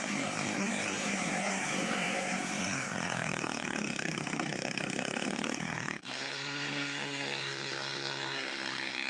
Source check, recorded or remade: remade